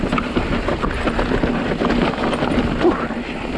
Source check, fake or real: real